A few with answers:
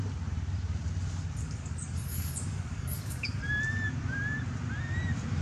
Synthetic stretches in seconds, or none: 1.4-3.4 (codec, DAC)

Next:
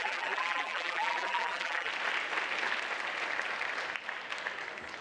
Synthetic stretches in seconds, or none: 0.0-1.9 (vocoder, BigVGAN v2)

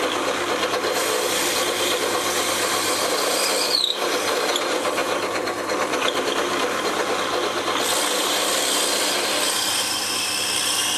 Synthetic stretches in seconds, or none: none

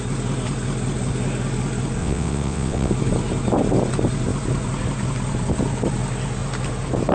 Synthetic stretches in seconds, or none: 2.0-2.9 (vocoder, WaveNeXt)

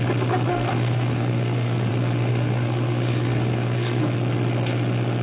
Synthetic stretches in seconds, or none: 0.5-1.9 (codec, SNAC); 2.3-4.0

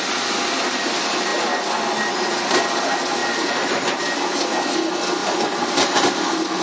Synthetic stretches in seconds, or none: 3.2-4.0 (vocoder, BigVGAN v2); 5.2-6.6

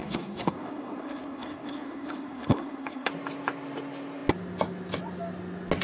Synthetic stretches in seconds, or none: 0.0-3.1 (codec, SNAC)